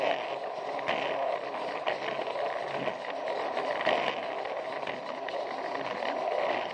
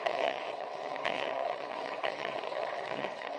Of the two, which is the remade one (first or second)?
second